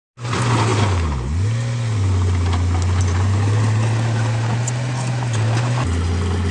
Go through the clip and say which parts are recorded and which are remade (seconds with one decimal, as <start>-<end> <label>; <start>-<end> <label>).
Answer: 0.0-6.5 recorded